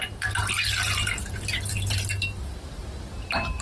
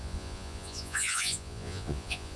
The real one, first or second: first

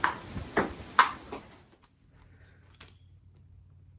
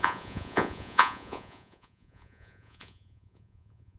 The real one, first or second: first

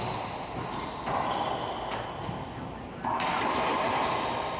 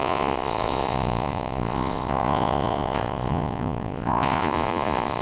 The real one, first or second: first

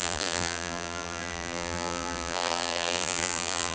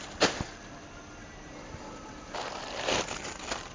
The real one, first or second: second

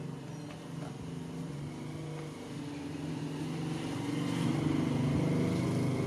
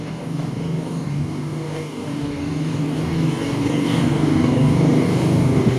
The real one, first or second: first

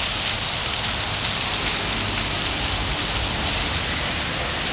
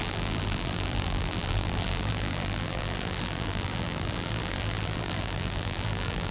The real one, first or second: first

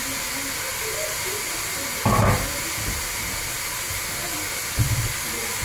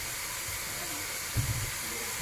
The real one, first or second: first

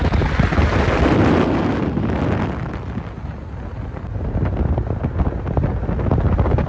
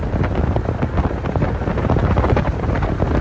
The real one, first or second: first